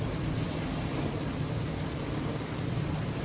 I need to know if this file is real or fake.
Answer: fake